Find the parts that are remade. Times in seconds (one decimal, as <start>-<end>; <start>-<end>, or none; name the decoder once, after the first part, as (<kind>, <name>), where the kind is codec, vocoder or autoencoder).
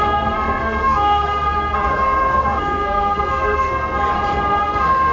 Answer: 0.0-4.1 (codec, SNAC); 4.6-5.1